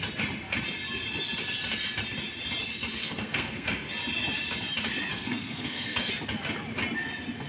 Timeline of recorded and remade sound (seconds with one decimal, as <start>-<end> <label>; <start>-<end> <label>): 0.0-3.0 recorded; 3.0-3.9 remade; 3.9-5.1 recorded; 5.1-6.1 remade; 6.1-7.5 recorded